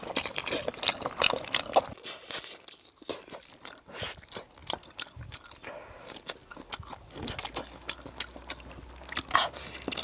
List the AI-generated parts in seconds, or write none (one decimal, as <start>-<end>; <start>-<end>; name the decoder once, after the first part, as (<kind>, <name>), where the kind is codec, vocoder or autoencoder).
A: none